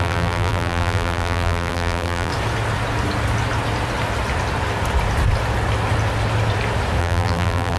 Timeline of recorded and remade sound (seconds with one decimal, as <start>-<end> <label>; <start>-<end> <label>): 0.0-2.3 remade; 2.3-7.0 recorded; 7.0-7.8 remade